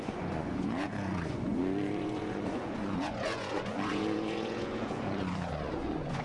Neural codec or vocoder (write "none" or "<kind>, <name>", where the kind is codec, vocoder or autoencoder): vocoder, Vocos